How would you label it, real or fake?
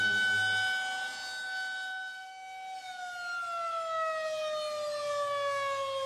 real